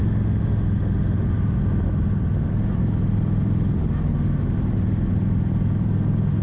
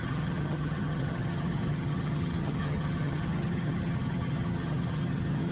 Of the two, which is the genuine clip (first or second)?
first